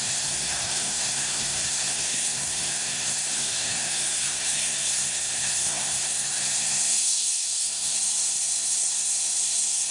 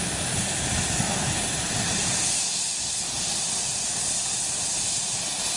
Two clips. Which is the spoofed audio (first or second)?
first